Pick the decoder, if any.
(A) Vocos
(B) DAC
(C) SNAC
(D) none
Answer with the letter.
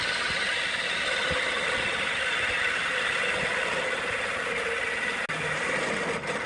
D